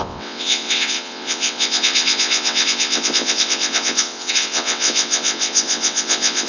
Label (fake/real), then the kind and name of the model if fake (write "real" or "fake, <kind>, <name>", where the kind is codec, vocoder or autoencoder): fake, vocoder, WaveNeXt